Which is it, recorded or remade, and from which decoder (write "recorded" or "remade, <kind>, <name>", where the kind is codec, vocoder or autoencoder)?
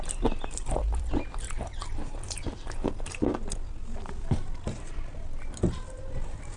recorded